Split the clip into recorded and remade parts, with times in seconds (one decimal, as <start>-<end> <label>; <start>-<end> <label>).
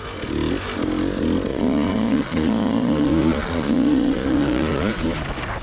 0.0-1.5 recorded; 1.5-4.9 remade; 4.9-5.6 recorded